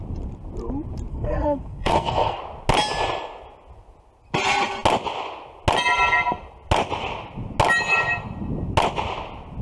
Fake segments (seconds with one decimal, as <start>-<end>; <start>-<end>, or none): 1.1-2.4